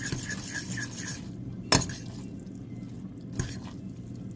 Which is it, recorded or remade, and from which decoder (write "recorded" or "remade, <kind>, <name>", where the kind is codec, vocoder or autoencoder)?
recorded